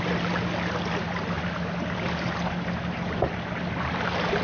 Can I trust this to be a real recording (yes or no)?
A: yes